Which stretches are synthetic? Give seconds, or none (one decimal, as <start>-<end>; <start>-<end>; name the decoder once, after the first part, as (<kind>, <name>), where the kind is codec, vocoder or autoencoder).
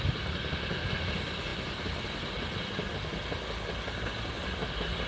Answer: none